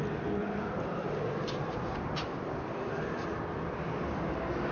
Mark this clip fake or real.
real